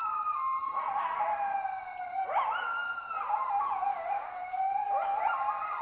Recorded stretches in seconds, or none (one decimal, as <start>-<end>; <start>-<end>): 0.0-5.8